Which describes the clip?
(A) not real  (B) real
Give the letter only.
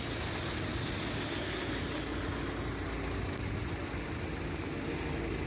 B